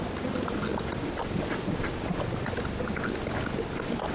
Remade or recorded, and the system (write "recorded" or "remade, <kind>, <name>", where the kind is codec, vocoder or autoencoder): recorded